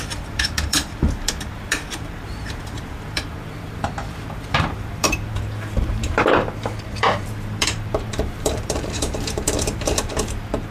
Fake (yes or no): yes